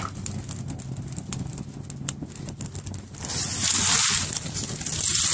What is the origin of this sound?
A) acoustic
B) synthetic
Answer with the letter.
A